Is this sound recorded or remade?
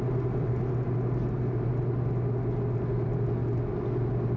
recorded